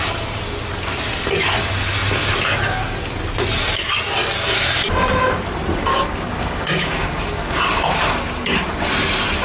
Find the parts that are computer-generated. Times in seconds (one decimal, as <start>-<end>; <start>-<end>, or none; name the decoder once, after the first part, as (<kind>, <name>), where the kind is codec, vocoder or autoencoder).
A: 5.9-7.6 (codec, DAC)